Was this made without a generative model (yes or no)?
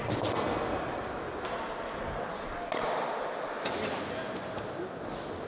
yes